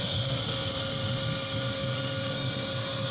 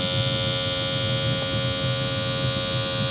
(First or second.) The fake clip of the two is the first